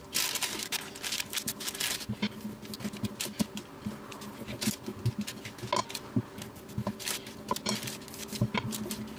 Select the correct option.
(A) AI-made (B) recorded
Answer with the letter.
B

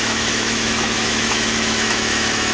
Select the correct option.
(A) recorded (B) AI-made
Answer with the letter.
B